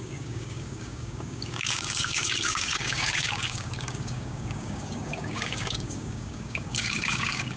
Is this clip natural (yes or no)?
no